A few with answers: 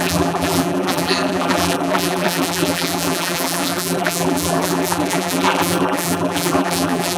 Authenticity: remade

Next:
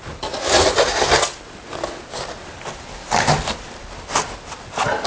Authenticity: recorded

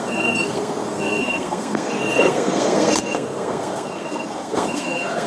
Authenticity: remade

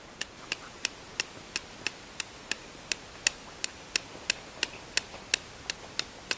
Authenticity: recorded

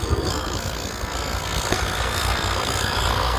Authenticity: remade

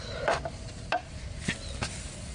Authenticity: recorded